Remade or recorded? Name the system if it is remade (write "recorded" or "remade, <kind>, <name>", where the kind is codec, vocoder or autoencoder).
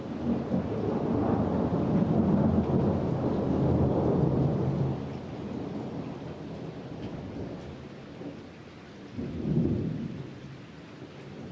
recorded